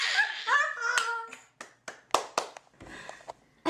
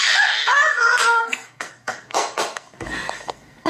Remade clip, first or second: second